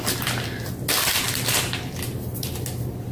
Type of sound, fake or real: real